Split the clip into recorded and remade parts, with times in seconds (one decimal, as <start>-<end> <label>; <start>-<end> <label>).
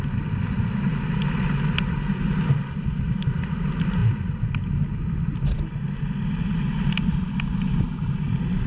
0.0-8.7 recorded